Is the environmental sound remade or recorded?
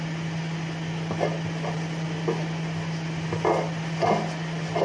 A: recorded